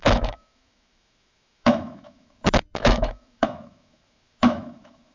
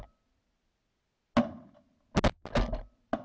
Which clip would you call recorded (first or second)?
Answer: second